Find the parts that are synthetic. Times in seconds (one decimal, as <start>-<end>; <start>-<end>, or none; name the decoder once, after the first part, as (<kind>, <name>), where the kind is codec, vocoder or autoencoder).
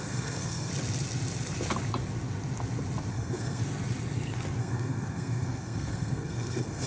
0.0-0.7 (codec, SNAC); 3.1-3.6; 4.6-6.9